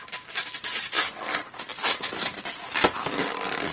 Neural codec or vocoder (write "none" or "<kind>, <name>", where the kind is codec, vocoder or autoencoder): none